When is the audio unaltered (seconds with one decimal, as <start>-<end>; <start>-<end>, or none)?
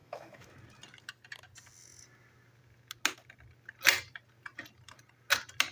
0.5-5.7